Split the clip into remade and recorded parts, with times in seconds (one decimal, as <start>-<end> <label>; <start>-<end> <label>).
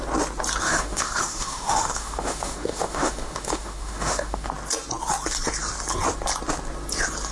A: 0.0-0.6 recorded; 0.6-4.5 remade; 4.5-7.3 recorded